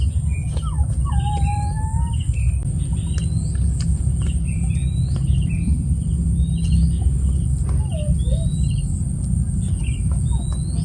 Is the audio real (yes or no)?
yes